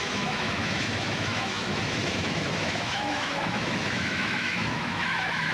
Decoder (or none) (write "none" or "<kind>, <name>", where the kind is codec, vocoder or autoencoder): autoencoder, DAC-VAE